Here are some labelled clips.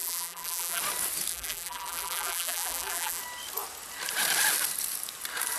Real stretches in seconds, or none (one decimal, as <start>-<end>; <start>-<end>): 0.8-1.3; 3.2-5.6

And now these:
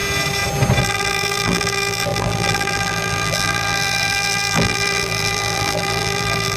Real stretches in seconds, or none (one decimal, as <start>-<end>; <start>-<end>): 0.0-0.8

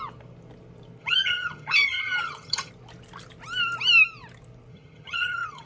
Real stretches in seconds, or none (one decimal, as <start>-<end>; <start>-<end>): 0.0-1.0; 2.7-4.7